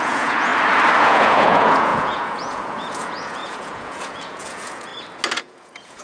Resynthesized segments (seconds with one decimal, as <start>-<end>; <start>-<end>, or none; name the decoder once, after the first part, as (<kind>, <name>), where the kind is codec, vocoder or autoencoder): 0.0-0.5 (vocoder, Vocos); 1.0-4.9; 5.4-6.0